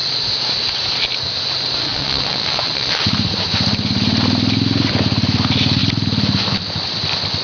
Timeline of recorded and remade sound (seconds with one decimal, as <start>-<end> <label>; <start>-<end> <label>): 0.0-1.8 recorded; 1.8-3.0 remade; 3.0-7.4 recorded